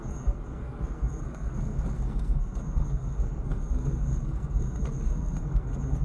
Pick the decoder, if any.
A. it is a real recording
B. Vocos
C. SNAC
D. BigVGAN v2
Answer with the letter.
C